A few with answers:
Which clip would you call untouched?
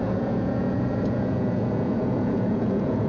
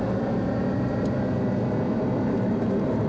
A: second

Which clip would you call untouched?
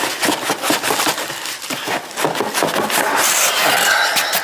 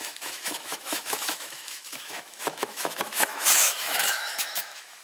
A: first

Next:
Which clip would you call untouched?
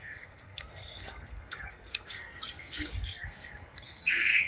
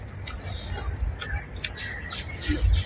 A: second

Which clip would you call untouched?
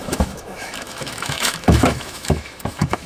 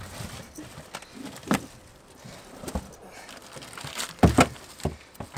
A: second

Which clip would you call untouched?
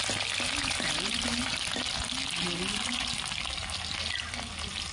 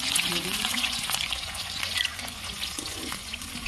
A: first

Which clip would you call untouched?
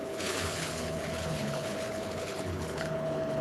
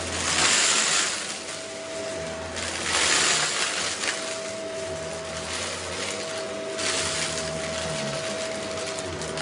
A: second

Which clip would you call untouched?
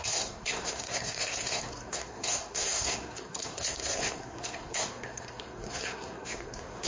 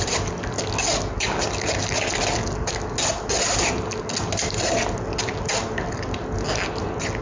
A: second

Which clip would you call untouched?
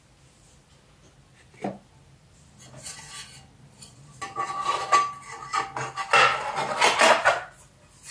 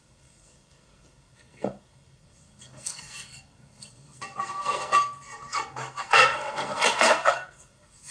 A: first